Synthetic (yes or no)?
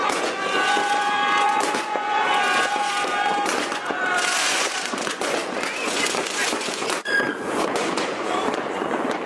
yes